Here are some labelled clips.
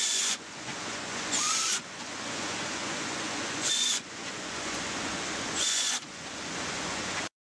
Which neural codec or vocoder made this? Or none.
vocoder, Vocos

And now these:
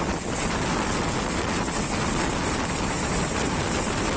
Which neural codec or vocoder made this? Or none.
none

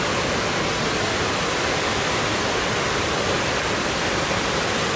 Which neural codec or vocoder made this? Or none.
none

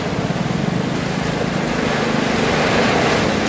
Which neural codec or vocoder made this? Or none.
none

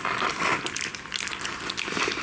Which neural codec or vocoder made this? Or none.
none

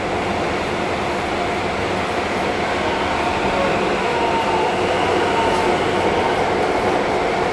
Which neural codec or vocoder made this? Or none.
none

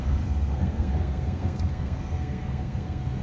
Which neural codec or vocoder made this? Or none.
codec, SNAC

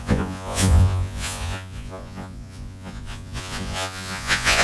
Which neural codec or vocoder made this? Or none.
vocoder, Vocos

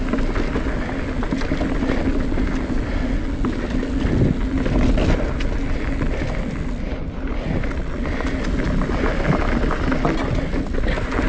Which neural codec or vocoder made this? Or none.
none